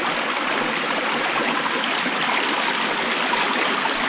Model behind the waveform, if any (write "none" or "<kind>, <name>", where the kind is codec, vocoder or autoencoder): none